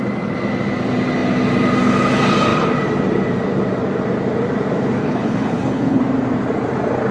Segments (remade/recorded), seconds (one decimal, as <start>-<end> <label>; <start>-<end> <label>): 0.0-5.0 recorded; 5.0-6.0 remade; 6.0-7.1 recorded